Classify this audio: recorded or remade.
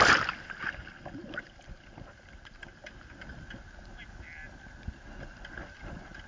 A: recorded